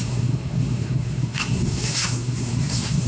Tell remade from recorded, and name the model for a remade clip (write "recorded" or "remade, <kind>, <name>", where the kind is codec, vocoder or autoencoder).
remade, codec, SNAC